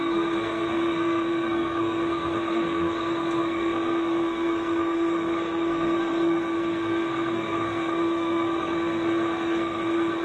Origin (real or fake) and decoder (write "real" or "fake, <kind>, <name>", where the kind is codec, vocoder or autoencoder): fake, codec, SNAC